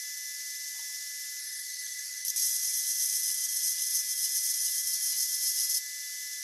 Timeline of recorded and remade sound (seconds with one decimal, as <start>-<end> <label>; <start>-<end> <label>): 0.0-1.4 recorded; 1.4-2.3 remade; 2.3-6.4 recorded